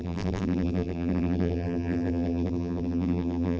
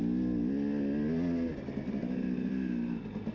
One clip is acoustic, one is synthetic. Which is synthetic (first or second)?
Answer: first